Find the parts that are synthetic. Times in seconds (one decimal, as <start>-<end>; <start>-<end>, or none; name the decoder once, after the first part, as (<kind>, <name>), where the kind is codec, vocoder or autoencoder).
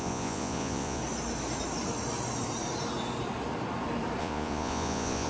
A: 0.0-1.0 (vocoder, Vocos); 4.2-5.3